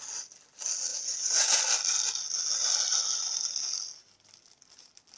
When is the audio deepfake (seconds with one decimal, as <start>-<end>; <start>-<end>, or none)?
0.9-1.6